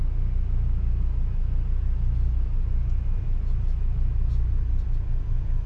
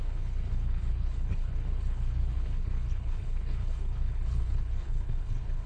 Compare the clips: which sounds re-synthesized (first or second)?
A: second